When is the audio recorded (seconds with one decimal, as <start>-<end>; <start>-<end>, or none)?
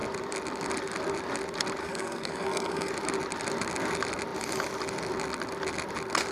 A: 0.0-1.8; 2.9-6.3